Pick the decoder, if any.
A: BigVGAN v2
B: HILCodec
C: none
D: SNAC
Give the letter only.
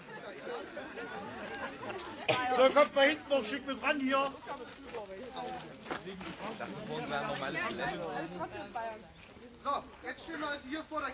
C